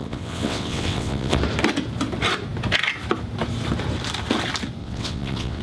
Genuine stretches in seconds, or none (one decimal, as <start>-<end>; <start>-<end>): 1.4-4.8